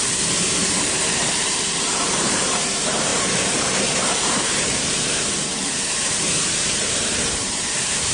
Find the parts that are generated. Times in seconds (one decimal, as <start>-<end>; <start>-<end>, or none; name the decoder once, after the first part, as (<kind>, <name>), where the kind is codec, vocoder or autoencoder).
0.0-8.1 (vocoder, BigVGAN v2)